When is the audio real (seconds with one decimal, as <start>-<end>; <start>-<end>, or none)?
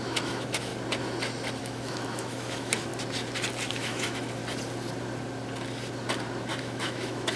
0.7-1.6; 2.9-3.7; 4.4-6.6